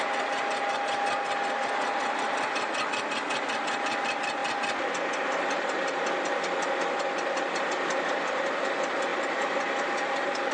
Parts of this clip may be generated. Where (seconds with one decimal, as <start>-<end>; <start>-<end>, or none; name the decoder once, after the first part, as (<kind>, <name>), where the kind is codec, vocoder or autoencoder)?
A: none